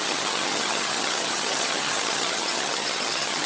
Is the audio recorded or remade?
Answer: remade